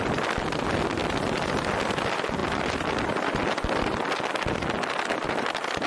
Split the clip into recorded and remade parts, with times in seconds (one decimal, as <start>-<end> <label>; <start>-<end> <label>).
0.0-5.9 recorded